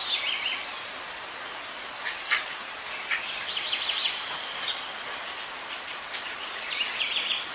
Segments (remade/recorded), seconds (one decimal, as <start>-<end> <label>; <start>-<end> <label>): 0.0-3.4 recorded; 3.4-7.5 remade